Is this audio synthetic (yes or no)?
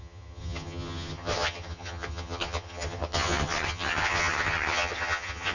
yes